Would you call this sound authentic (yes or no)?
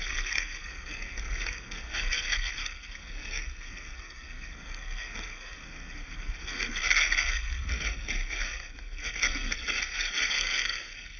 no